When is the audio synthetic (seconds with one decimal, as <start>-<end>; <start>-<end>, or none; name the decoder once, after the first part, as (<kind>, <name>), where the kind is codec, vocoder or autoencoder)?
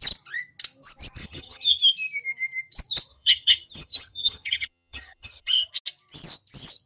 1.2-1.8 (vocoder, HiFi-GAN); 3.1-5.7